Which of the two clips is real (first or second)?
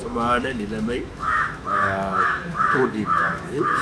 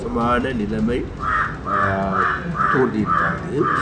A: second